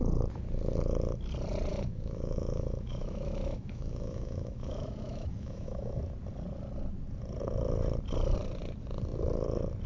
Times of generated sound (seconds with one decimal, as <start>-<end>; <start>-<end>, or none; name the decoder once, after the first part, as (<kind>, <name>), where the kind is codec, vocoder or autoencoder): 1.7-6.0 (autoencoder, DAC-VAE)